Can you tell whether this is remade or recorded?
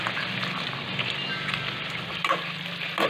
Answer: recorded